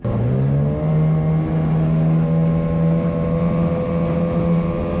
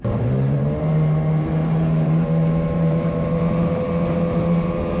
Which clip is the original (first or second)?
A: first